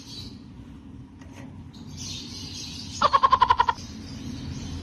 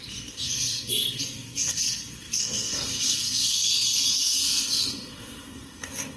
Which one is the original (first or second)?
first